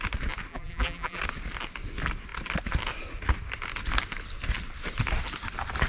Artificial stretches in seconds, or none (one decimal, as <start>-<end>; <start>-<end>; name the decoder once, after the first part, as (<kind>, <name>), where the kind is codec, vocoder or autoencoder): 0.5-1.2 (vocoder, BigVGAN v2)